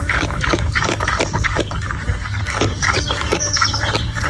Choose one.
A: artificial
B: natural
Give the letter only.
A